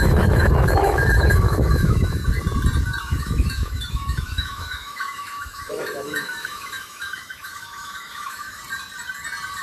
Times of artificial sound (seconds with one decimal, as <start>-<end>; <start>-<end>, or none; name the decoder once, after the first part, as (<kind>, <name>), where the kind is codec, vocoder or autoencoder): 0.0-2.2 (autoencoder, DAC-VAE); 3.0-8.6